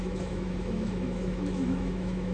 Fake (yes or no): yes